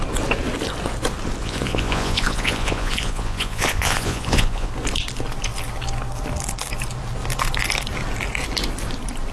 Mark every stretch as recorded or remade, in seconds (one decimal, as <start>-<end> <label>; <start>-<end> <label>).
0.0-1.4 recorded; 1.4-4.7 remade; 4.7-9.3 recorded

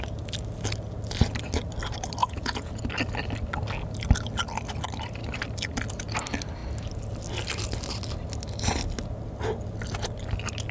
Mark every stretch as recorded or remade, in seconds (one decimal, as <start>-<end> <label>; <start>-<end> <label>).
0.0-2.2 recorded; 2.2-2.8 remade; 2.8-10.7 recorded

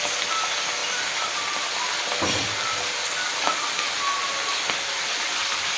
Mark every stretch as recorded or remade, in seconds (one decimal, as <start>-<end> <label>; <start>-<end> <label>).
0.0-5.8 recorded

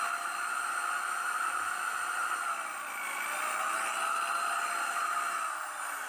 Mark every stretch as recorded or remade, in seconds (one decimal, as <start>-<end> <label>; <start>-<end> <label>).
0.0-6.1 recorded

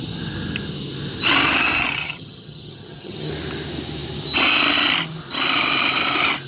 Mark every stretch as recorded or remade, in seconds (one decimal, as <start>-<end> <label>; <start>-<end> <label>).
0.0-2.0 recorded; 2.0-3.3 remade; 3.3-6.5 recorded